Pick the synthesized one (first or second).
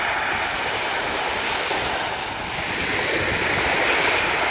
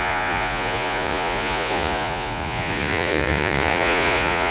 second